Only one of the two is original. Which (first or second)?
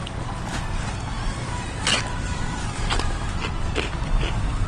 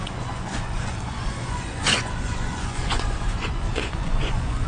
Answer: first